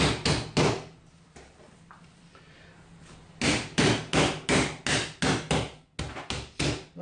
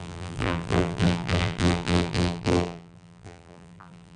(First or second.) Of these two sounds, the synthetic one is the second